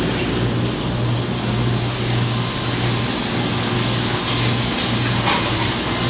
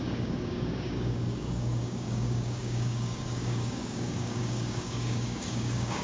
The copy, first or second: second